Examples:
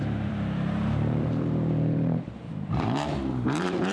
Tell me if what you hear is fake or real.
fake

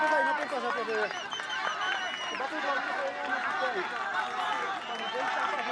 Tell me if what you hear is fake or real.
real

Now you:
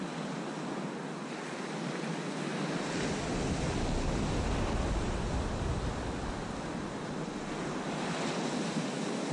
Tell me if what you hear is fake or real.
real